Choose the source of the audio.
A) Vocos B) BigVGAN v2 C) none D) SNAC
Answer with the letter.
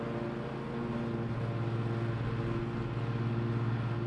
C